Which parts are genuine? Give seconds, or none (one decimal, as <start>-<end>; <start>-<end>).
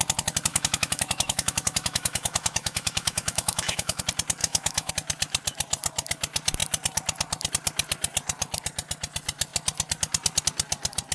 0.0-0.5; 4.0-4.4; 4.9-11.1